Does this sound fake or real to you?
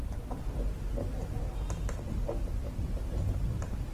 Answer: real